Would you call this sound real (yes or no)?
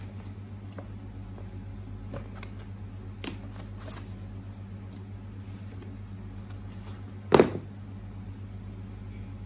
yes